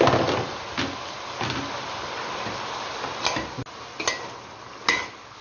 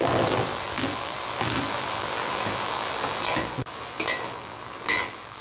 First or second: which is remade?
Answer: second